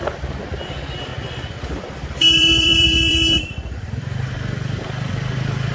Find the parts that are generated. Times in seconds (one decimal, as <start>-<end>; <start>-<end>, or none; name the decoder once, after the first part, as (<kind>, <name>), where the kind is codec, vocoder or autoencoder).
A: 1.1-4.3 (vocoder, BigVGAN v2); 5.1-5.7